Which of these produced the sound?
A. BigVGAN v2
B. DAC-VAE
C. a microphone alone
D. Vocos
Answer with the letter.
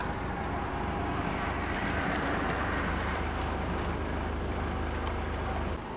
A